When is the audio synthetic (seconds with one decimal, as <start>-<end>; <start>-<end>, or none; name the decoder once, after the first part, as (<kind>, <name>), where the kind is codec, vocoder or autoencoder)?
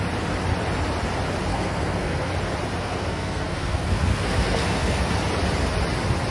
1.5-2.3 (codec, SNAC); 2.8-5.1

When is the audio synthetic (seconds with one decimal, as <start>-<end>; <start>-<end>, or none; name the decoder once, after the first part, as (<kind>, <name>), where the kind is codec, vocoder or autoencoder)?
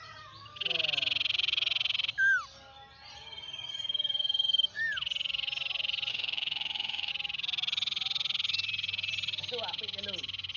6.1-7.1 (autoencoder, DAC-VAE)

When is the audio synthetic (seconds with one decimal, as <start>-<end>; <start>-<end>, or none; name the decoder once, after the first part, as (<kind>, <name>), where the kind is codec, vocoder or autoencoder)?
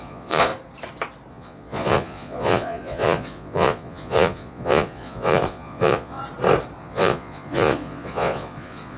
0.0-0.5 (vocoder, Vocos); 1.3-6.2; 6.8-9.0